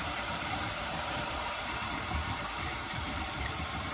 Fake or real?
fake